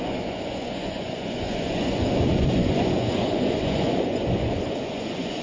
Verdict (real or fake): fake